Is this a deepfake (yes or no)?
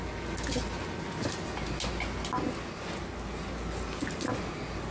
no